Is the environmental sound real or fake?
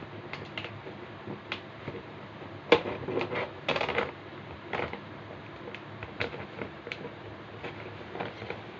real